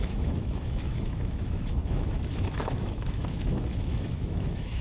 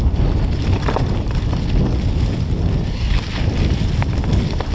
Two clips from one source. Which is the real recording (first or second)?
second